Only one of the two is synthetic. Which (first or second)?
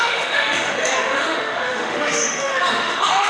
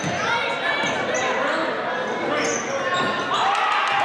first